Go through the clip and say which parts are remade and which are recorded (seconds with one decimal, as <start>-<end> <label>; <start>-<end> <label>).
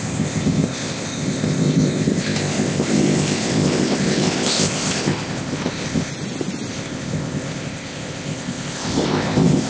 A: 0.0-6.1 remade; 6.1-6.7 recorded; 6.7-9.7 remade